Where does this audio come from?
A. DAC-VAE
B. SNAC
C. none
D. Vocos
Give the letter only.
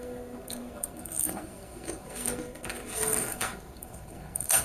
B